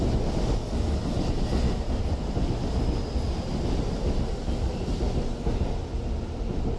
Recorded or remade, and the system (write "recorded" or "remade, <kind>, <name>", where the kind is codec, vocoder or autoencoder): recorded